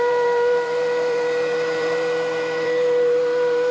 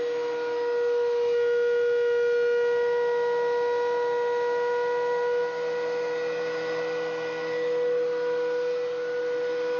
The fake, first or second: first